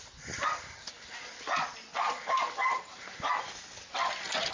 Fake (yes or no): no